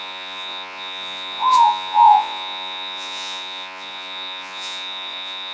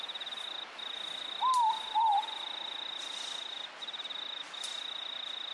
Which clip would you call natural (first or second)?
second